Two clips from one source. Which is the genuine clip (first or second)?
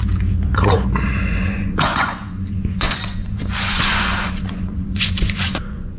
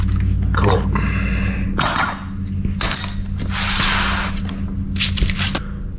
second